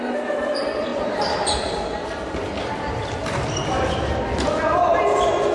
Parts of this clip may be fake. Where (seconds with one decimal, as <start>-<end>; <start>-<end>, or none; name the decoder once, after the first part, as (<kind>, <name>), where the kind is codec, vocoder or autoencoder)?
none